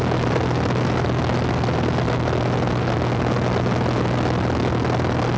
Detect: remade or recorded recorded